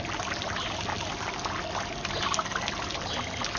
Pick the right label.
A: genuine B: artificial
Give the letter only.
A